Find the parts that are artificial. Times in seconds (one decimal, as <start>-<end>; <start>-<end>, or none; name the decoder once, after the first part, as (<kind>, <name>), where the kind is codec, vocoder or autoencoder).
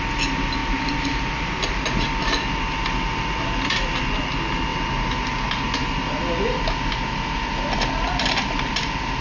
none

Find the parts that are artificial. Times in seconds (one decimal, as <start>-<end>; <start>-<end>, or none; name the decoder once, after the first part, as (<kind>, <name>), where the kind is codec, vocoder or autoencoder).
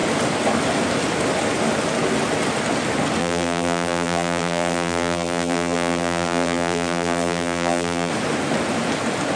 3.2-8.1 (vocoder, BigVGAN v2)